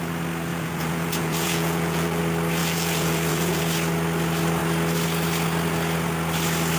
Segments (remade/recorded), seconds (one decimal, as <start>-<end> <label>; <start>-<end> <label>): 0.0-0.5 recorded; 0.5-2.2 remade; 2.2-2.6 recorded; 2.6-3.6 remade; 3.6-6.8 recorded